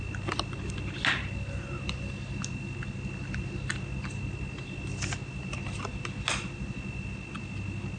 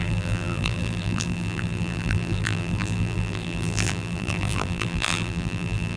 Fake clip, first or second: second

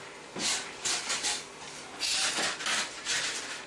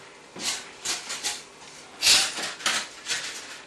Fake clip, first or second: second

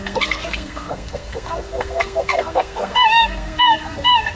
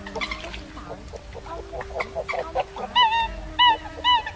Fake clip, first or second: first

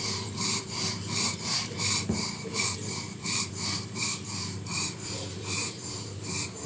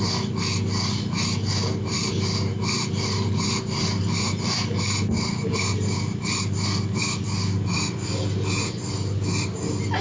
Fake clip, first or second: first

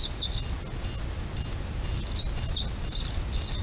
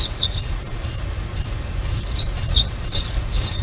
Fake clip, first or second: second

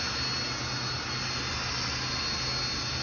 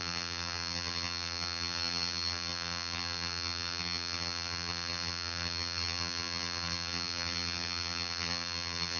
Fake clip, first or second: second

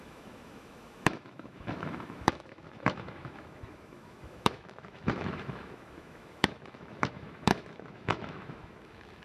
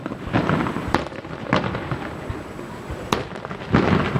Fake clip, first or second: first